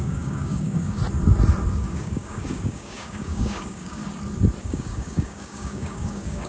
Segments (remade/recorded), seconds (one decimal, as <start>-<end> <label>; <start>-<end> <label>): 0.0-1.0 remade; 1.0-1.7 recorded; 1.7-4.0 remade; 4.0-4.6 recorded; 4.6-6.5 remade